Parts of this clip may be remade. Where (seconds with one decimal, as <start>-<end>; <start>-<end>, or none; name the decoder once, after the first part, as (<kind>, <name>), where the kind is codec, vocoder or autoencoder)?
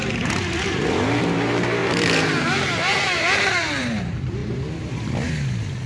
0.0-4.4 (vocoder, BigVGAN v2)